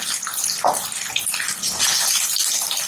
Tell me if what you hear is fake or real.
real